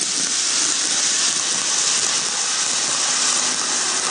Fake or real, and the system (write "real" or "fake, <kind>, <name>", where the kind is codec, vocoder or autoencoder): real